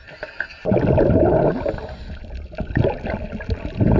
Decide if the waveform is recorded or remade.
recorded